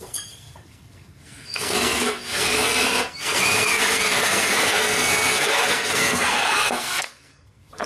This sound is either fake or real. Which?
fake